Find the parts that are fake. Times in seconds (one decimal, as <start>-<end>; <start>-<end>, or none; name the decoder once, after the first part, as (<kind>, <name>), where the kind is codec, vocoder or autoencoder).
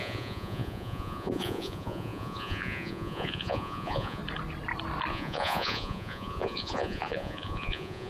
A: 0.0-4.2 (vocoder, Vocos); 5.1-8.1